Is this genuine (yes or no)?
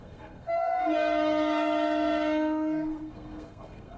no